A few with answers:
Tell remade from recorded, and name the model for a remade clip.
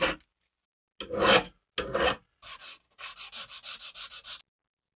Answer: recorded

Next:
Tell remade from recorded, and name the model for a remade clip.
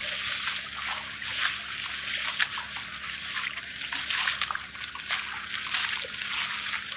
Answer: recorded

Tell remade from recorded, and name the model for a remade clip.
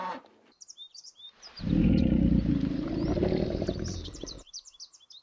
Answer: remade, vocoder, BigVGAN v2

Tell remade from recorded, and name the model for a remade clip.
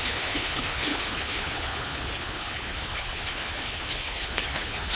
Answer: remade, codec, HILCodec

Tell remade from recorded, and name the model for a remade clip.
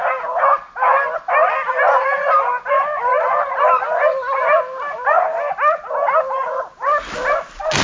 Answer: recorded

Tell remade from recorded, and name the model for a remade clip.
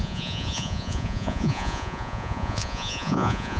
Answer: remade, vocoder, Vocos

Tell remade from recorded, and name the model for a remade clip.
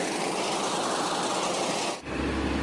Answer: recorded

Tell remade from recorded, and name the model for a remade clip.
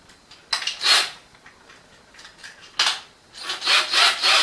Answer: recorded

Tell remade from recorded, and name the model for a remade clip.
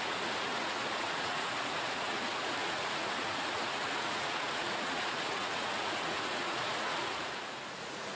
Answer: remade, vocoder, Vocos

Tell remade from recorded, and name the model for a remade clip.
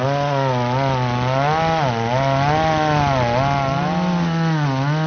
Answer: recorded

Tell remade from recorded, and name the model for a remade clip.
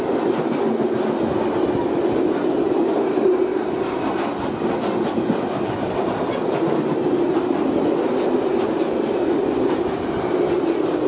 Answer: recorded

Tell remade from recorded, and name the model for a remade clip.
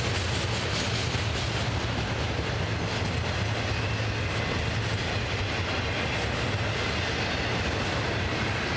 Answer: recorded